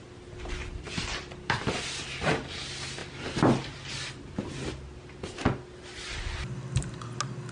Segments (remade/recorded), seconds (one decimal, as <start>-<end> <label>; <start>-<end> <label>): 0.0-7.5 recorded